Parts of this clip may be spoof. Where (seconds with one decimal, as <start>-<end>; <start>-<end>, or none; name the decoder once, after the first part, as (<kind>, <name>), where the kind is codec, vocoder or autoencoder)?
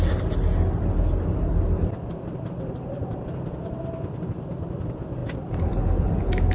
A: none